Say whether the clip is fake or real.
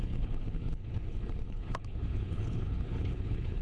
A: fake